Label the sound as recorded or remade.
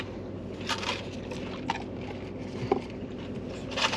recorded